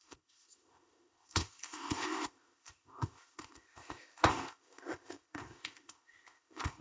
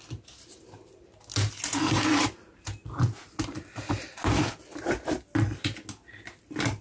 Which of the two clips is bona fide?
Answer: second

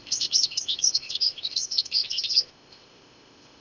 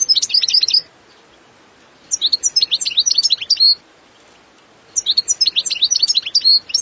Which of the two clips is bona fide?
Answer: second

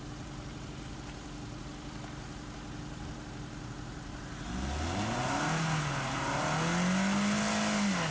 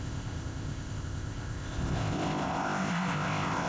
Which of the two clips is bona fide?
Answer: first